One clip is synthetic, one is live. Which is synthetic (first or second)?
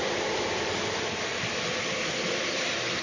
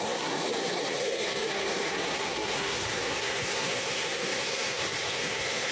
second